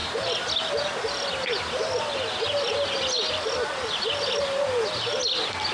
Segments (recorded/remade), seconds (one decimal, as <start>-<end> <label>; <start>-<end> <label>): 0.0-5.7 recorded